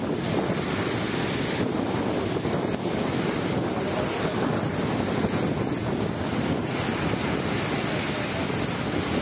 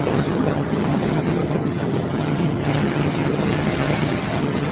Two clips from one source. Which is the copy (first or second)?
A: second